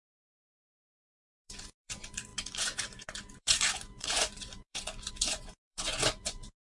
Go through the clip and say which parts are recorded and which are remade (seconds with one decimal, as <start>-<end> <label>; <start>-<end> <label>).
0.0-6.7 remade